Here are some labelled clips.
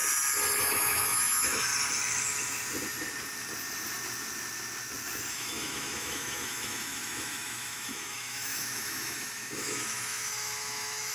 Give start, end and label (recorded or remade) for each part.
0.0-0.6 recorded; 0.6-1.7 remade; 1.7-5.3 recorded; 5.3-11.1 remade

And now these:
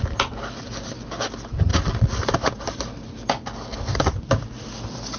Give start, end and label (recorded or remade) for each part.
0.0-1.7 recorded; 1.7-4.3 remade; 4.3-5.2 recorded